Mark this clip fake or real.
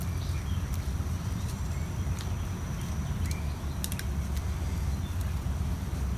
real